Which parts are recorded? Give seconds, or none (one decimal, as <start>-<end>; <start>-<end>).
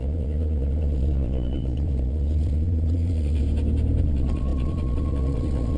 3.4-4.0